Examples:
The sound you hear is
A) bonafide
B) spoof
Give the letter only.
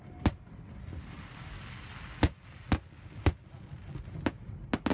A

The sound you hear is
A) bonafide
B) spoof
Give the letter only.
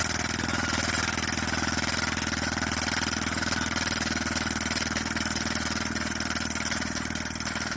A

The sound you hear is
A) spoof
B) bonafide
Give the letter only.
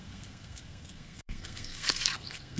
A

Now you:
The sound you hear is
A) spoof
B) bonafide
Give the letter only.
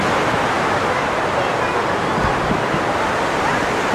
B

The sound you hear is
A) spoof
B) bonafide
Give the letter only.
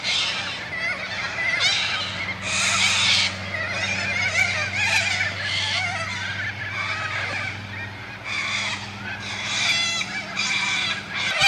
B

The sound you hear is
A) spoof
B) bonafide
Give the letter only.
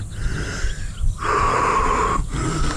B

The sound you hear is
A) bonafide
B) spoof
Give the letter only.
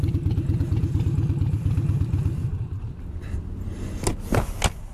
A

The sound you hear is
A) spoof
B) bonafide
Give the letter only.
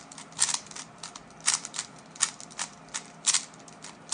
B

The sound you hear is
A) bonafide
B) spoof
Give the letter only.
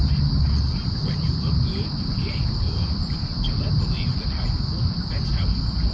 A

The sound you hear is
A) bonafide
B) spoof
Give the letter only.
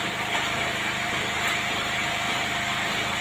A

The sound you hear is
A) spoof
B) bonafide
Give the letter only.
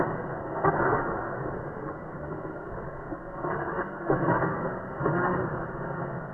A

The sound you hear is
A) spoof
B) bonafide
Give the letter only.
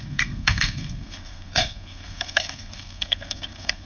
A